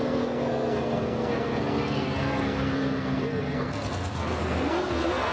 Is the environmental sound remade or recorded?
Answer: remade